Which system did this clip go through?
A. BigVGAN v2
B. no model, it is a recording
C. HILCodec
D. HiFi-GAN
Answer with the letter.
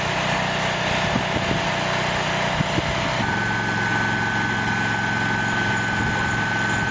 B